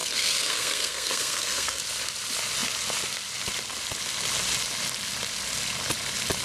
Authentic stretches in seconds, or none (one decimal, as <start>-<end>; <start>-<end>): 1.8-6.4

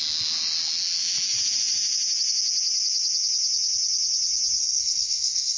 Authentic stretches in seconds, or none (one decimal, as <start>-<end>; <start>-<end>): 0.0-4.6